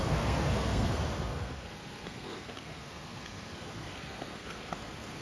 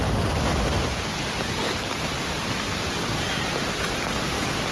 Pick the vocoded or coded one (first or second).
first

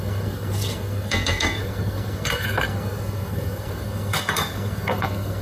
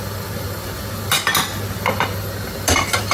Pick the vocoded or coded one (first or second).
first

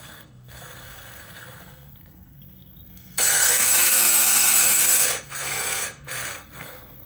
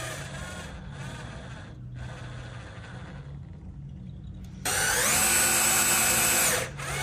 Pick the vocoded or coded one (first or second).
first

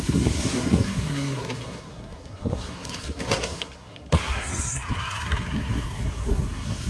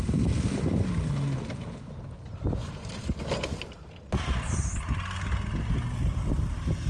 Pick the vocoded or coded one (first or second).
first